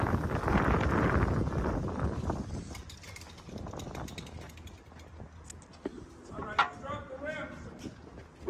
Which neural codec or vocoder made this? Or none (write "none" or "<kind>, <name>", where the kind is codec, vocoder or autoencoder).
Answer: none